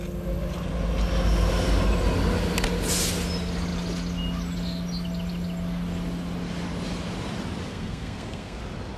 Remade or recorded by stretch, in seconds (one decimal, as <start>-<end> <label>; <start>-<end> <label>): 0.0-7.7 recorded; 7.7-8.6 remade; 8.6-9.0 recorded